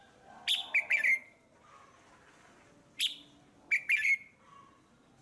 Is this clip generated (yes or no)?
no